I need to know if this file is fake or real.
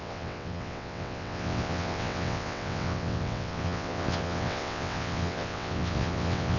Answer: fake